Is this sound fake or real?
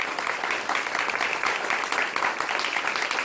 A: real